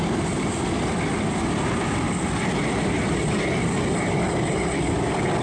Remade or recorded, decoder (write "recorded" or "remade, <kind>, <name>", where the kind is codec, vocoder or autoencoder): recorded